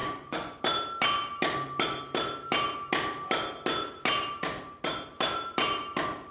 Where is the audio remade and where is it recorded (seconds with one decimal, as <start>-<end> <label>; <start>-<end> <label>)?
0.0-0.6 remade; 0.6-6.3 recorded